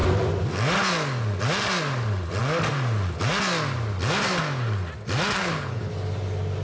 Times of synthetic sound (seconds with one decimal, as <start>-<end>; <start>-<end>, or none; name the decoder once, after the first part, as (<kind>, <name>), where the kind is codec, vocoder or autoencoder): 5.4-5.9 (codec, HILCodec)